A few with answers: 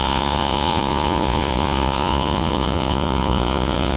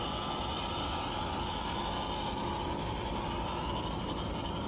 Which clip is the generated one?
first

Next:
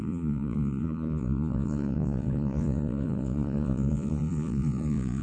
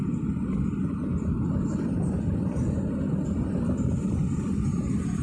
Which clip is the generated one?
first